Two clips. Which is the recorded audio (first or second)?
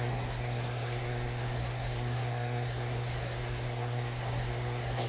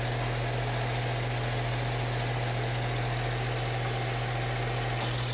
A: second